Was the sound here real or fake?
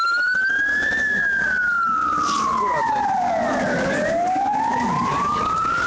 real